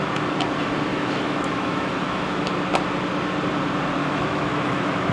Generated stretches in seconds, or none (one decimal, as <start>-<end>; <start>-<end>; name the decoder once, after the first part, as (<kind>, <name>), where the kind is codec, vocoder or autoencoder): 0.9-2.5 (autoencoder, DAC-VAE); 4.0-5.1